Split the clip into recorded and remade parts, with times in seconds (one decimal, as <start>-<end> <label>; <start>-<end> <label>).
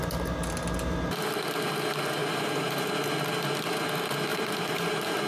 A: 0.0-2.2 recorded; 2.2-2.9 remade; 2.9-4.3 recorded; 4.3-5.3 remade